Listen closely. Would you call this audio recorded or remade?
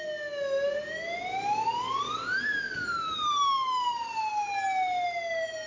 recorded